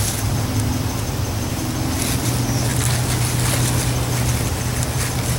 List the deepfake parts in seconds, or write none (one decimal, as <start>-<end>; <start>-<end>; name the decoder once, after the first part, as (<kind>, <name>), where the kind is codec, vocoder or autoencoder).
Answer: none